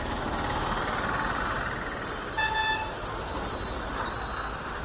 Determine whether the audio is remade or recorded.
recorded